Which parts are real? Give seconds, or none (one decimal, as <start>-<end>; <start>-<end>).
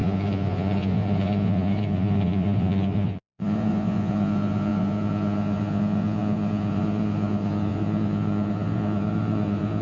none